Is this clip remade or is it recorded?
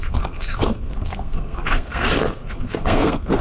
remade